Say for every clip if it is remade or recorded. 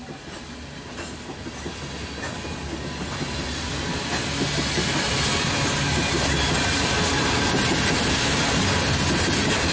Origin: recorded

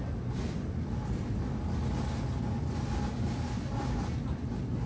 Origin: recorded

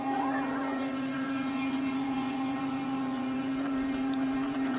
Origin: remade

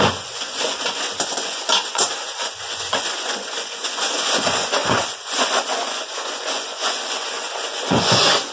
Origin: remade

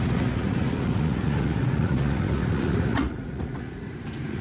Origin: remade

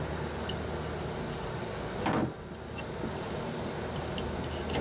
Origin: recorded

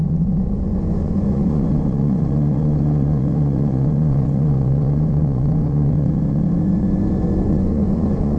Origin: remade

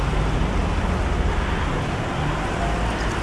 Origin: recorded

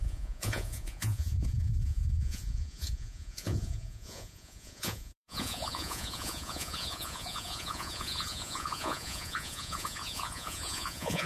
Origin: remade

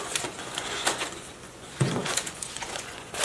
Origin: remade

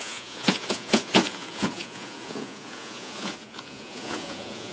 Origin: remade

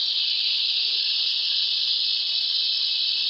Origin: recorded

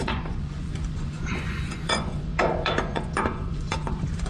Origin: remade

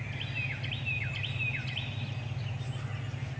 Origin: recorded